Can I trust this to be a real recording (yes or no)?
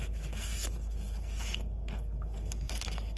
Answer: no